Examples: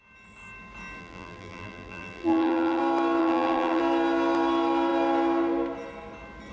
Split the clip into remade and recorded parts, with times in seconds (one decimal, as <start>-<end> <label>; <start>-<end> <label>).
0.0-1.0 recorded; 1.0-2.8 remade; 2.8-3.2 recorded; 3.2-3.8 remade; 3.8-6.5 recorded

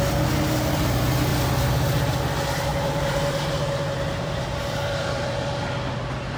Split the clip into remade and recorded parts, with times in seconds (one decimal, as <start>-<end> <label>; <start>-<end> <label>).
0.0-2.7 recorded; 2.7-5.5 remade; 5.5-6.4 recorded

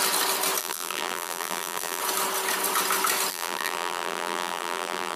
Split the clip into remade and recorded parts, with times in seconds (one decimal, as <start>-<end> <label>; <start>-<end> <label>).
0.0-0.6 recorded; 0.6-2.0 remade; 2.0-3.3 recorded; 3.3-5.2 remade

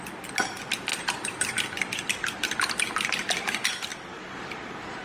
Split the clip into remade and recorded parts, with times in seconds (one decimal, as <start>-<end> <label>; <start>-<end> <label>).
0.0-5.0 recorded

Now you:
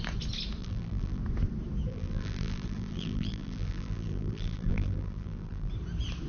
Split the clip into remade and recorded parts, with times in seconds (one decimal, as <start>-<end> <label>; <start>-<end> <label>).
0.0-0.6 recorded; 0.6-1.2 remade; 1.2-1.9 recorded; 1.9-5.7 remade; 5.7-6.3 recorded

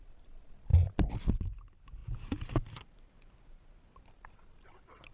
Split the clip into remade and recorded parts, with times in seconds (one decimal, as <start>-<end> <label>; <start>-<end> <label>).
0.0-5.1 recorded

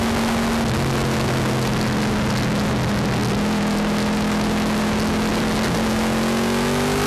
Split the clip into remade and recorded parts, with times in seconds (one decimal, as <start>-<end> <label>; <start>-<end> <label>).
0.0-7.1 recorded